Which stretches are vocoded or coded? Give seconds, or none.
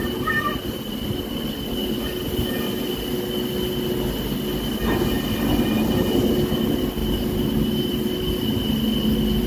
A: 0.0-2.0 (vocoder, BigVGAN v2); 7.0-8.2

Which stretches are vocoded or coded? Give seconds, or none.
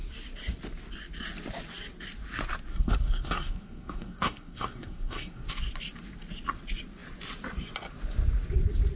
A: 2.7-5.5 (codec, SNAC)